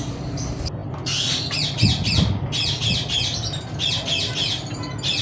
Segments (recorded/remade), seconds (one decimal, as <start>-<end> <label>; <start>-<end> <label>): 0.0-5.2 recorded